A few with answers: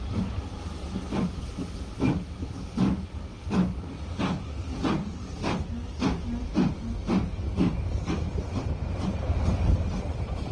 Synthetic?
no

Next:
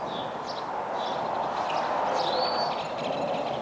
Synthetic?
no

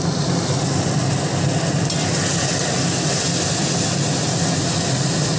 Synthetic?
no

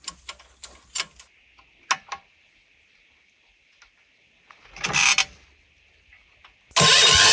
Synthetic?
no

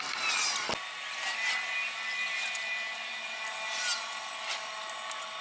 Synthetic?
no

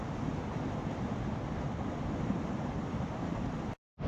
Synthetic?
no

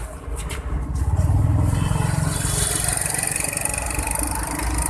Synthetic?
no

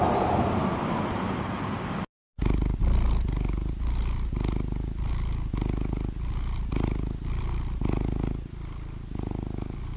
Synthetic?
no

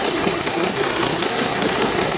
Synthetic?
yes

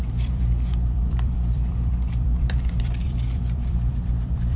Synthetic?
yes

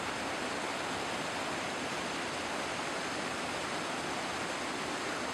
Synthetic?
no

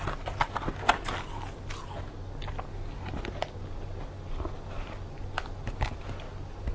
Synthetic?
no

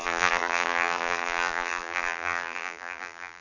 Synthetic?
yes